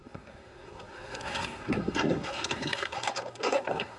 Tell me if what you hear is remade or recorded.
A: remade